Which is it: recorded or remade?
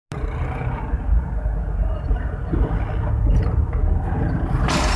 recorded